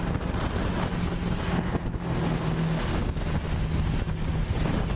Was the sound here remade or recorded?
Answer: recorded